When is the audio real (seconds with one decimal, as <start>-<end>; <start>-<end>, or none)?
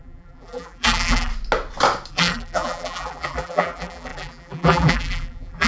1.3-2.1